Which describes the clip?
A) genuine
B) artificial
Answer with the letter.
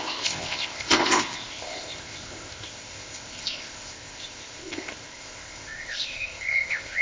B